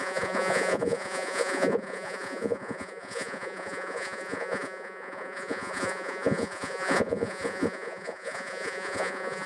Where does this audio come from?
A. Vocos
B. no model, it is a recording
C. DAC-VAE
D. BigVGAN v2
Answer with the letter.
A